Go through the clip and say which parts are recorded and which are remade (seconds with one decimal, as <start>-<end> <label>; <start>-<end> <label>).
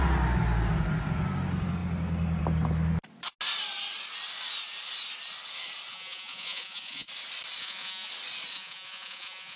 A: 0.0-5.9 recorded; 5.9-7.1 remade; 7.1-7.6 recorded; 7.6-8.1 remade; 8.1-8.5 recorded; 8.5-9.6 remade